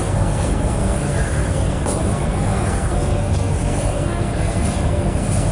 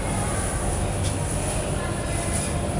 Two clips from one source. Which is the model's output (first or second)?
first